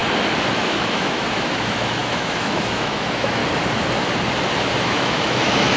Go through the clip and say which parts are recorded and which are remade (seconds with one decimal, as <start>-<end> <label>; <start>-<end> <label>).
0.0-0.5 recorded; 0.5-3.4 remade; 3.4-4.7 recorded; 4.7-5.8 remade